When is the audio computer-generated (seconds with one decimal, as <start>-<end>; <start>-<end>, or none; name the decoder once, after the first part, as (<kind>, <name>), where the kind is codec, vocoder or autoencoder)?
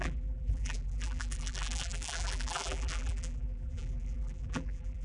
0.0-5.0 (vocoder, BigVGAN v2)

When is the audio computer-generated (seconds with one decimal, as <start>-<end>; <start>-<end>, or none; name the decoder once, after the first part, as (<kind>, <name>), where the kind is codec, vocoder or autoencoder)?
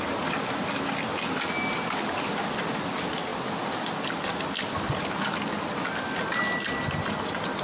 none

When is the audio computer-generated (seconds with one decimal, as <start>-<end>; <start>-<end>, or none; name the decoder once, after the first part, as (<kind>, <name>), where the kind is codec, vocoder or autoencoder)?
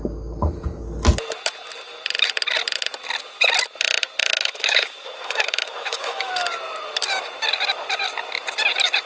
4.2-6.3 (autoencoder, DAC-VAE)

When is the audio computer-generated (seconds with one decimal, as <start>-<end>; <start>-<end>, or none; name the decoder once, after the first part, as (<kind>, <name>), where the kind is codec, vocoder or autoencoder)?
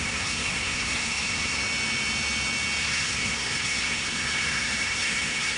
0.0-1.6 (codec, SNAC); 2.8-5.6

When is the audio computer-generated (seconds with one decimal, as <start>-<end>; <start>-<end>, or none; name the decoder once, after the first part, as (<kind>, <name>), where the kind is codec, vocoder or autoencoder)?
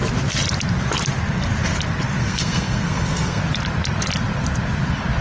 2.2-3.4 (codec, SNAC)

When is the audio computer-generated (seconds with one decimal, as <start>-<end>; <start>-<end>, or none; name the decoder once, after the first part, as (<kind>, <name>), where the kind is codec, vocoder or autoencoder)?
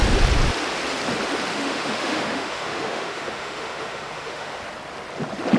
1.5-4.6 (autoencoder, DAC-VAE)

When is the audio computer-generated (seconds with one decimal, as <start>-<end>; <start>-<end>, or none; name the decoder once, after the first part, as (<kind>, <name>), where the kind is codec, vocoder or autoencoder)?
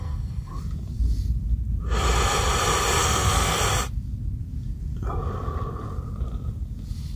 0.0-0.6 (codec, SNAC); 3.0-3.6